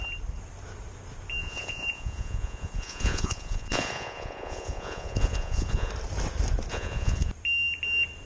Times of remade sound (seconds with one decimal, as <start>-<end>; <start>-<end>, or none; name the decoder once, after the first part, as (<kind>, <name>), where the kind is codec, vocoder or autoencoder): 1.4-5.9 (vocoder, Vocos); 6.7-7.3